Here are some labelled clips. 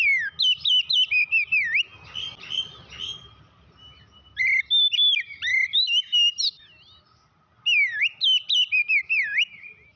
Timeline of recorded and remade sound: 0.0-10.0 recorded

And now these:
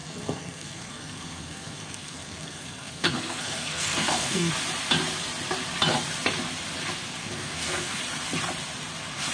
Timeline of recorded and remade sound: 0.0-4.5 remade; 4.5-7.2 recorded; 7.2-8.0 remade; 8.0-9.3 recorded

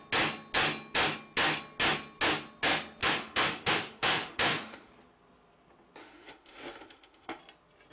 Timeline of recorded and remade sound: 0.0-3.0 recorded; 3.0-4.9 remade; 4.9-6.0 recorded; 6.0-7.4 remade; 7.4-7.9 recorded